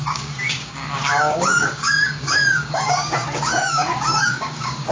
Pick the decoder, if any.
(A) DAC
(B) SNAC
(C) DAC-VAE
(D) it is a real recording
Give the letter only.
A